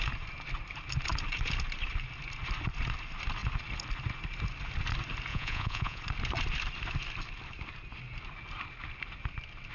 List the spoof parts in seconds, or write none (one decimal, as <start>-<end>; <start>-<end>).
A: 5.3-6.0